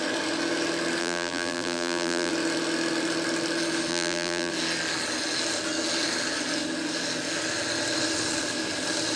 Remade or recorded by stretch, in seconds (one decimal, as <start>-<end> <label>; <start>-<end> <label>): 0.0-1.0 recorded; 1.0-2.3 remade; 2.3-3.9 recorded; 3.9-4.5 remade; 4.5-9.2 recorded